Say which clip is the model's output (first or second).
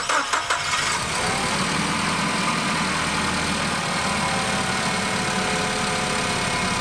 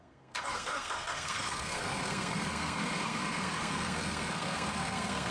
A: second